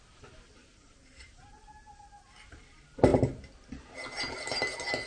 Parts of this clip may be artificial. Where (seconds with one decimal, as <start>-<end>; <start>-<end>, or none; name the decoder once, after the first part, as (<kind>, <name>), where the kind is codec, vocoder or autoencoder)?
none

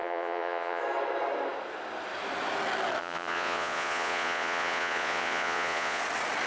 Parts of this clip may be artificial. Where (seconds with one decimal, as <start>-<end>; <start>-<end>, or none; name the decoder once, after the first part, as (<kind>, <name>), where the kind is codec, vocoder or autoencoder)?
0.0-0.8 (vocoder, Vocos); 3.0-6.0